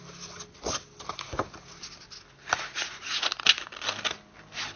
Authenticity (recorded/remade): recorded